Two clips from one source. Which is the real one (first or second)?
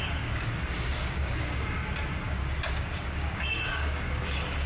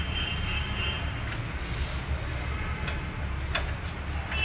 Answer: second